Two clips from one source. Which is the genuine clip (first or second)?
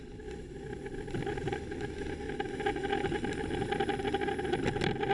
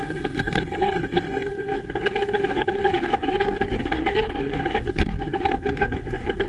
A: first